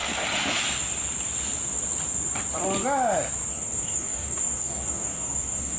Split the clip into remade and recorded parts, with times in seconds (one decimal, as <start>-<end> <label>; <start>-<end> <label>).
0.0-3.5 recorded; 3.5-5.8 remade